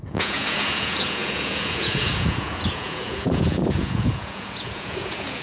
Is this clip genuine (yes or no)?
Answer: no